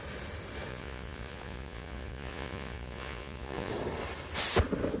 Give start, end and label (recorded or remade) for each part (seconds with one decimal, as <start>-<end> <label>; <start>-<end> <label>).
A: 0.0-0.7 recorded; 0.7-3.7 remade; 3.7-5.0 recorded